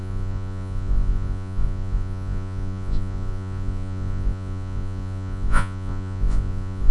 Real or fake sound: fake